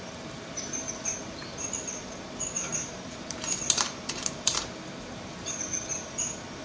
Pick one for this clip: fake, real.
fake